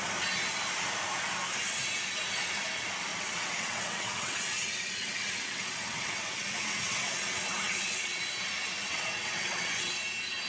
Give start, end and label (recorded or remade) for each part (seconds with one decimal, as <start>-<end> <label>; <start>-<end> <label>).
0.0-3.1 recorded; 3.1-8.3 remade; 8.3-8.9 recorded; 8.9-9.9 remade; 9.9-10.5 recorded